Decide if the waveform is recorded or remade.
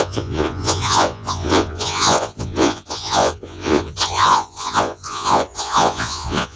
remade